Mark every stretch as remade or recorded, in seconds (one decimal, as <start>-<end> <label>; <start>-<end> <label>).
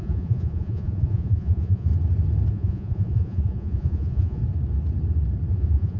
0.0-1.9 remade; 1.9-2.5 recorded; 2.5-4.4 remade; 4.4-5.5 recorded; 5.5-6.0 remade